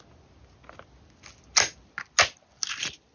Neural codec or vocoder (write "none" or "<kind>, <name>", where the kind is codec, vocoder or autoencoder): none